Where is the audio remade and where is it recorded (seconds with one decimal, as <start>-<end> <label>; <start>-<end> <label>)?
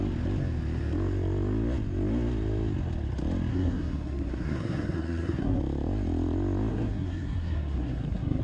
0.0-3.5 recorded; 3.5-5.6 remade; 5.6-6.7 recorded; 6.7-8.4 remade